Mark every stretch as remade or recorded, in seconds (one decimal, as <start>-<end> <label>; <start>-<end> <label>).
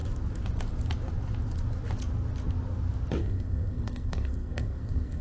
0.0-3.2 recorded; 3.2-5.2 remade